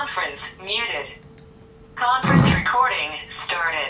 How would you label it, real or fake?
real